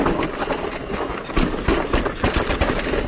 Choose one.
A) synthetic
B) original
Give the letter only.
B